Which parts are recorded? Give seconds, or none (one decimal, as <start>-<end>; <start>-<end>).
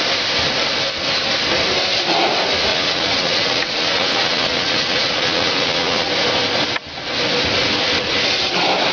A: 0.0-2.7; 6.1-8.9